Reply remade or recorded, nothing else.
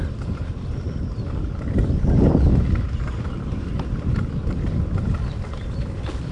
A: remade